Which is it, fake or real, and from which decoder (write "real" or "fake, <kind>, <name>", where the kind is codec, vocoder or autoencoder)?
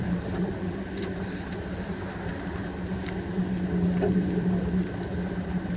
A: real